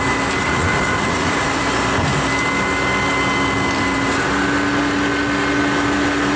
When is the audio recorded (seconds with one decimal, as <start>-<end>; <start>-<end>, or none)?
0.0-0.4; 1.6-6.4